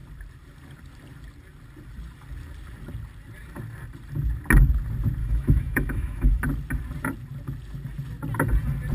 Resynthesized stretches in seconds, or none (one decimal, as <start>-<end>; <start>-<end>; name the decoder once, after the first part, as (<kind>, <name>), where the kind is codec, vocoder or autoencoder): 5.2-6.4 (autoencoder, DAC-VAE)